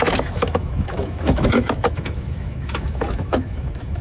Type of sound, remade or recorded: remade